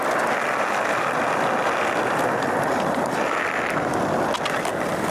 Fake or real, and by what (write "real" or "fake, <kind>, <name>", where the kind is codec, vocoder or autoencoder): real